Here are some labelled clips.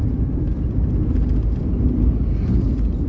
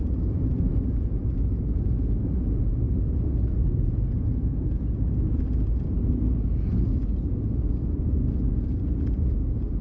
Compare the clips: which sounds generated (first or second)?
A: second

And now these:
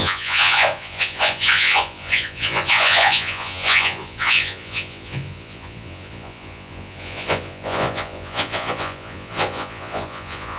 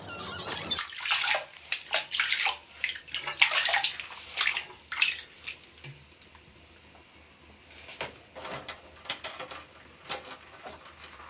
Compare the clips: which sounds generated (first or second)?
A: first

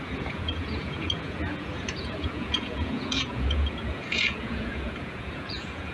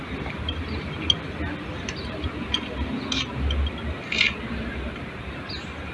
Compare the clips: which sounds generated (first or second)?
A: first